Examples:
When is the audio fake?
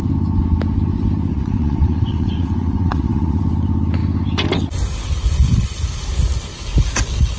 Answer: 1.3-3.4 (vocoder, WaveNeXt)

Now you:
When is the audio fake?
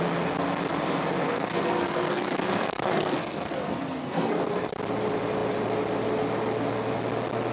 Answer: 1.2-4.7 (codec, SNAC)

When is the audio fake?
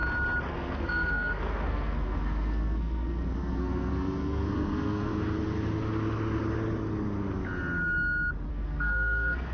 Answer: 0.5-5.1 (codec, SNAC); 8.5-9.5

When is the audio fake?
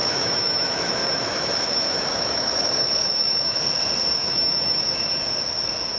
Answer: 0.0-3.6 (autoencoder, DAC-VAE); 4.2-5.2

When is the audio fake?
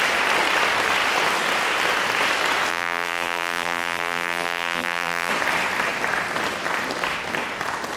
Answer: 2.7-5.3 (vocoder, BigVGAN v2)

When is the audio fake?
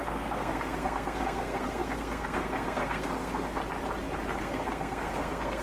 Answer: 0.0-3.6 (codec, SNAC); 4.4-5.6